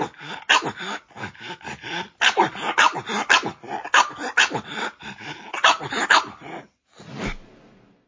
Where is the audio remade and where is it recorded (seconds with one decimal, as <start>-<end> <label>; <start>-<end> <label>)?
0.0-8.1 recorded